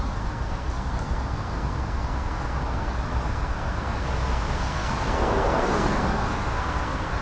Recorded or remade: remade